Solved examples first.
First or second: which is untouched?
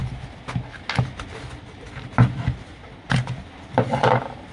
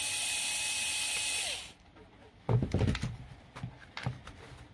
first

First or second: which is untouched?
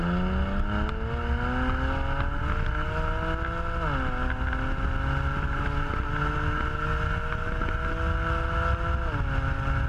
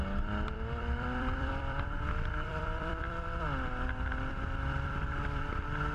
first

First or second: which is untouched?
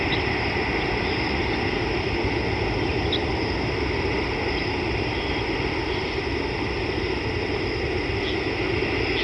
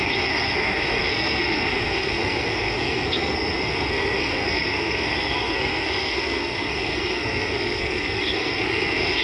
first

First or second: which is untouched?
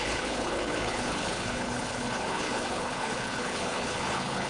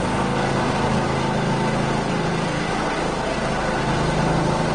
second